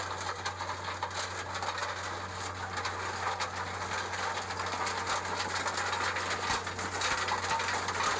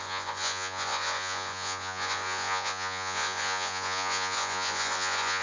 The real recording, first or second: first